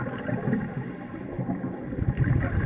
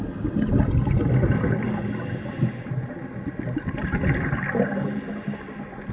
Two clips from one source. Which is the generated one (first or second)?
first